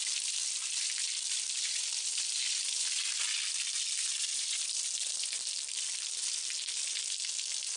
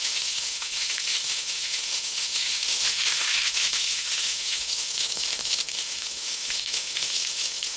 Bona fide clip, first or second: first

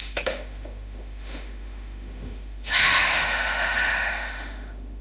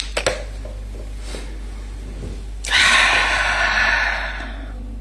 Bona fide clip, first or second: second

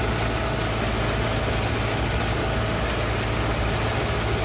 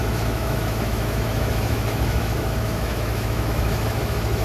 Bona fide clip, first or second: first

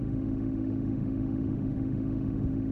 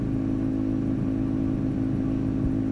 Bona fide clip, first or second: second